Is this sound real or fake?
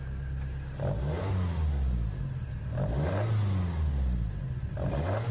real